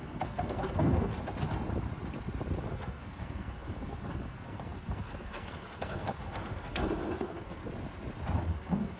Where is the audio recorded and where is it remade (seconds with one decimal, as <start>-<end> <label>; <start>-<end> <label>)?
0.0-1.1 remade; 1.1-2.7 recorded; 2.7-7.6 remade; 7.6-8.5 recorded; 8.5-9.0 remade